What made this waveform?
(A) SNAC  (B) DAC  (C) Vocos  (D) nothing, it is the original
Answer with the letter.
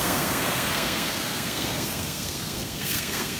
A